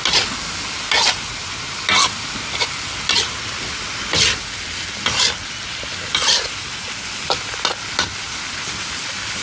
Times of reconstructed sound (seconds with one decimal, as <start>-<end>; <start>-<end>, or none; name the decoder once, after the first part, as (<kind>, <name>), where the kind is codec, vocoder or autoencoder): none